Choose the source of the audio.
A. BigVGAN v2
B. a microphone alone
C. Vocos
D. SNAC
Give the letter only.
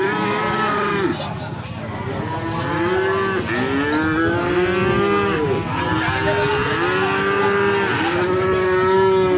B